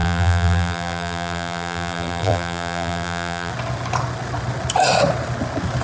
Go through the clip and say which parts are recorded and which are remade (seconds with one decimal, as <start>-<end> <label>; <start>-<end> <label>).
0.0-3.5 remade; 3.5-5.8 recorded

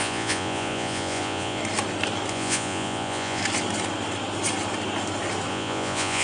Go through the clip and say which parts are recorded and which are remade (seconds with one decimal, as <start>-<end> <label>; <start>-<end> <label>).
0.0-1.6 remade; 1.6-2.3 recorded; 2.3-3.4 remade; 3.4-5.5 recorded; 5.5-6.2 remade

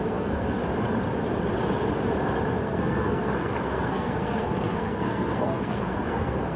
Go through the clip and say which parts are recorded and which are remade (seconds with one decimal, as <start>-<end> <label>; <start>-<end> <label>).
0.0-0.6 remade; 0.6-2.6 recorded; 2.6-6.6 remade

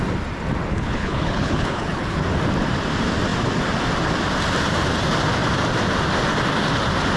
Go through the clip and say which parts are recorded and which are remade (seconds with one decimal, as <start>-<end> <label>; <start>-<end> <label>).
0.0-0.7 recorded; 0.7-2.2 remade; 2.2-7.2 recorded

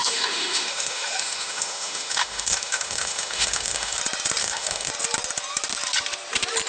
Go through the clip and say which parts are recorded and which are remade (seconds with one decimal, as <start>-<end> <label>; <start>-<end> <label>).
0.0-4.0 remade; 4.0-4.4 recorded; 4.4-4.9 remade; 4.9-6.7 recorded

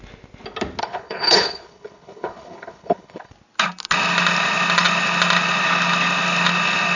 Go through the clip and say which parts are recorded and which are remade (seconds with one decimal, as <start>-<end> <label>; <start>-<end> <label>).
0.0-0.8 recorded; 0.8-3.3 remade; 3.3-7.0 recorded

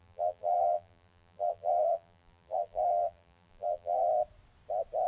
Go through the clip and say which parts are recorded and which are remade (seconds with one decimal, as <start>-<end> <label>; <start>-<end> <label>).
0.0-4.1 remade; 4.1-5.1 recorded